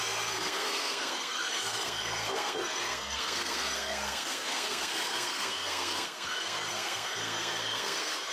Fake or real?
fake